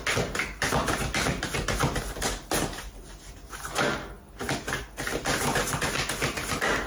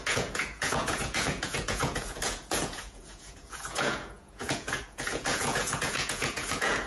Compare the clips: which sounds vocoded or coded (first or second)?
second